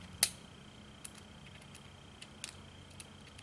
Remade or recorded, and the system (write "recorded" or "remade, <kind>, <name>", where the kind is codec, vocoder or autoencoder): recorded